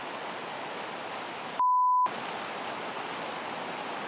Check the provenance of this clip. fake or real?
real